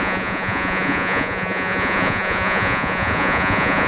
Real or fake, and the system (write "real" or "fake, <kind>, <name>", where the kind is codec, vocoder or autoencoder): fake, vocoder, Vocos